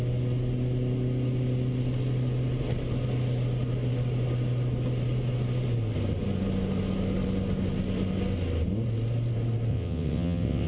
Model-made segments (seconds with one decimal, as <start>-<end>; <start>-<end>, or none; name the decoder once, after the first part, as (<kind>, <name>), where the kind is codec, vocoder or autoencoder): 9.7-10.7 (vocoder, WaveNeXt)

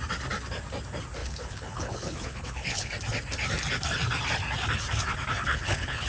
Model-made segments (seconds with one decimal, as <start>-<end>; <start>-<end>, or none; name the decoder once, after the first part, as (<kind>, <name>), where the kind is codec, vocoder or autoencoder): 1.2-2.9 (codec, HILCodec); 5.5-6.1

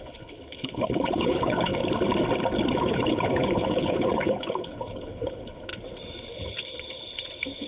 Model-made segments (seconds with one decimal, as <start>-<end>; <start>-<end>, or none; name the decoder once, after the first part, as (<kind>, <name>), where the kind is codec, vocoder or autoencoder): 0.0-1.7 (codec, HILCodec); 2.8-5.7; 6.3-7.7

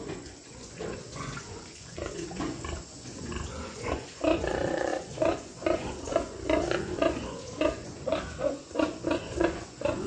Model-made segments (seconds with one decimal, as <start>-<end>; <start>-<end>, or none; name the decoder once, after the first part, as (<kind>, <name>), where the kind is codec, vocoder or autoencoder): 0.0-10.1 (vocoder, Vocos)

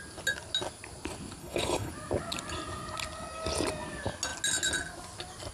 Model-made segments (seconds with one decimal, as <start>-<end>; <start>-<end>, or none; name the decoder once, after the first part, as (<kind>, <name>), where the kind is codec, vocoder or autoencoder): 1.4-1.9 (codec, HILCodec)

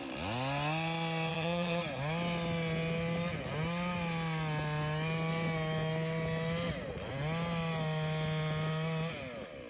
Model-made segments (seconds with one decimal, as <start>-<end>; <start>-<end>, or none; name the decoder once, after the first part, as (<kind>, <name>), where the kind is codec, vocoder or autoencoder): 1.3-1.8 (vocoder, HiFi-GAN)

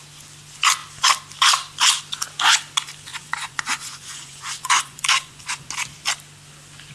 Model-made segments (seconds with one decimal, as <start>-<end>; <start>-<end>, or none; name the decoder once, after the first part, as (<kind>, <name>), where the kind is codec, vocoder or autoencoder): 3.1-5.7 (vocoder, Vocos)

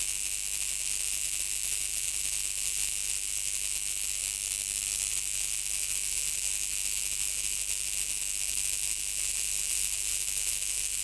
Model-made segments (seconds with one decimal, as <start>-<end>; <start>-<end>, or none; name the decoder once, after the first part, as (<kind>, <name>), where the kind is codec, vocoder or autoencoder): 0.0-11.0 (autoencoder, DAC-VAE)